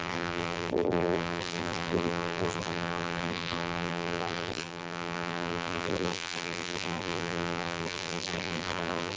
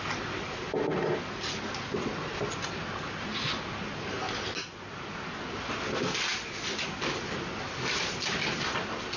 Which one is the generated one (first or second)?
first